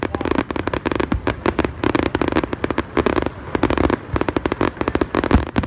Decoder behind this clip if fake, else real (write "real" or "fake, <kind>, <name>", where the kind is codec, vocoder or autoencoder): real